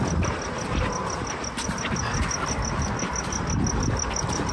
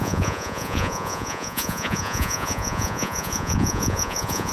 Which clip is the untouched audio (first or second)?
first